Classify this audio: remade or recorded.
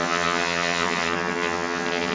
remade